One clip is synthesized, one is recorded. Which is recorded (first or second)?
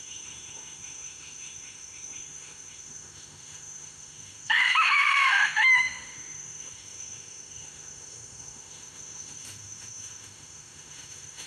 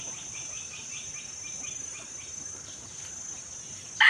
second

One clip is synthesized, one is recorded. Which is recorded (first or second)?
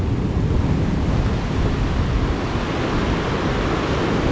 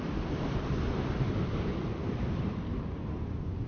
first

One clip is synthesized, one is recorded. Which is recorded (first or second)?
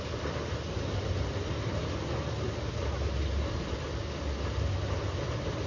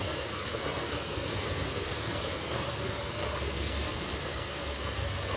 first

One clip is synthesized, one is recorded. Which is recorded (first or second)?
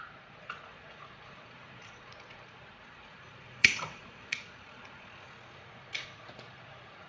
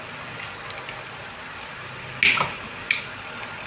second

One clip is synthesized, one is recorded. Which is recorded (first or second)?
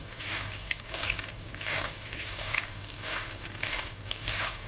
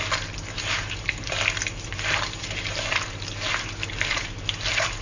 second